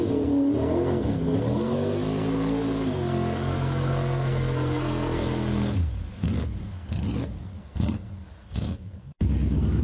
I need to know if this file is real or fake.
fake